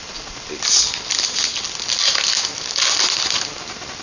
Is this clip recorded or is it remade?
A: recorded